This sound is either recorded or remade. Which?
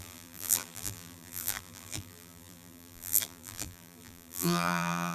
remade